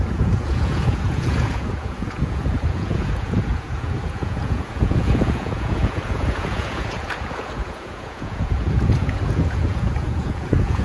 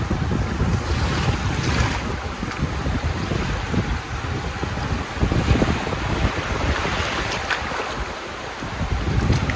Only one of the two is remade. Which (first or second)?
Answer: first